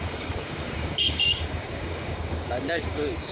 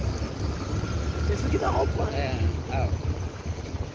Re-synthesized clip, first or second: first